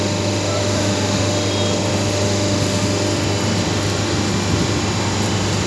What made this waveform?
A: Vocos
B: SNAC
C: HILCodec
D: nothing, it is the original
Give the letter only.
D